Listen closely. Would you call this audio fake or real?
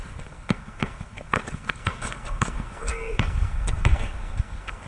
fake